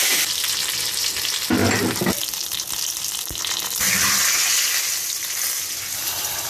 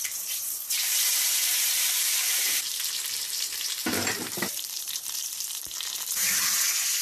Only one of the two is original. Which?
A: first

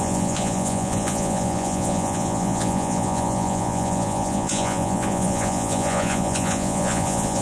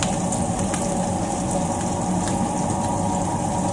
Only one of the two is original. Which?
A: second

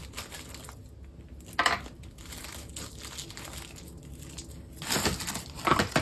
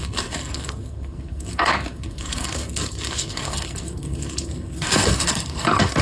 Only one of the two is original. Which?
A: first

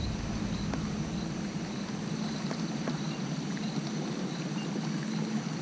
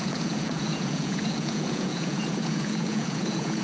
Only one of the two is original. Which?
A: first